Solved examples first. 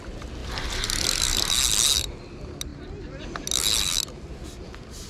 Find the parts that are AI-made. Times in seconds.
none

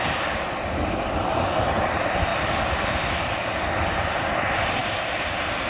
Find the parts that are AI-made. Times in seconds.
none